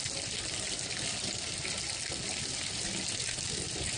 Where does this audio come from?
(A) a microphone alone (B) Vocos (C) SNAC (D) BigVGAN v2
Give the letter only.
A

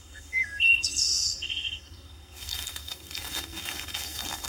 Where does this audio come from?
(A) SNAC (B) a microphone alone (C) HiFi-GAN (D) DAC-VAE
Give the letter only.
A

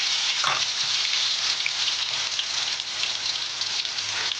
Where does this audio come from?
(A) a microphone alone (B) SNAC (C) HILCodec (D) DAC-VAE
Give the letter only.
A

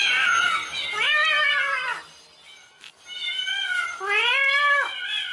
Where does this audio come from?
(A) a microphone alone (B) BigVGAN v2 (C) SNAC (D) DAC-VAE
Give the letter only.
A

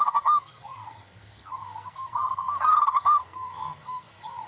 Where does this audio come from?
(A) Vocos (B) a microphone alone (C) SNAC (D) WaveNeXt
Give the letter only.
C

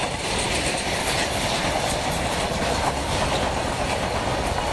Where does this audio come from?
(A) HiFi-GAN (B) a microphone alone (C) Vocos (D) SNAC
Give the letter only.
B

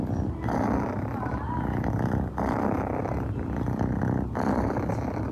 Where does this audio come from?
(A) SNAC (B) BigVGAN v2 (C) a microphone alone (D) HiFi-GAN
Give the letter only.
C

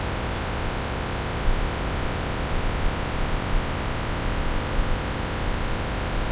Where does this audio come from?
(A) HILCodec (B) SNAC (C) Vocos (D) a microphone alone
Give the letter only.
D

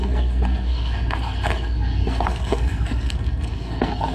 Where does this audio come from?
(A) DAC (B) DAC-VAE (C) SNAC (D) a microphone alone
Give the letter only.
C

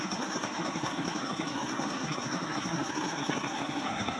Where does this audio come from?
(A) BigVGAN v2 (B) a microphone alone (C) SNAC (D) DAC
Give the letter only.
C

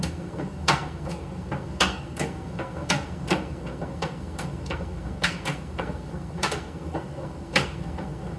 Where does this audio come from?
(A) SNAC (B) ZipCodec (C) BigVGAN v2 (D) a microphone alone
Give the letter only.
A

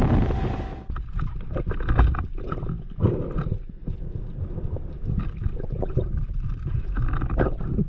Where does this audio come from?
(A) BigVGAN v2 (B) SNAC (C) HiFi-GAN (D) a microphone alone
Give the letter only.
D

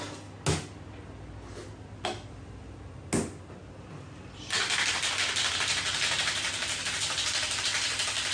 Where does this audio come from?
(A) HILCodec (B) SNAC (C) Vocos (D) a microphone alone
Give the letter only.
D